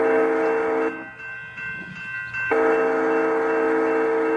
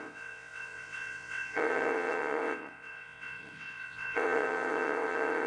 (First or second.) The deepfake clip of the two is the second